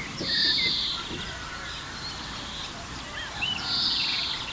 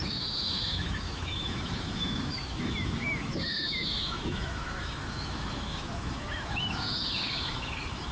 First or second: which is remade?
second